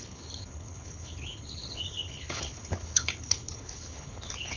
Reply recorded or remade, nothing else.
remade